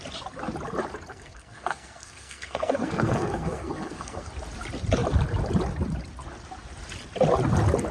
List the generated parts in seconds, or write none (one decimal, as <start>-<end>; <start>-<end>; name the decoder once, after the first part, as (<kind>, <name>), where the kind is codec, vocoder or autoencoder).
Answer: 1.1-4.3 (codec, SNAC)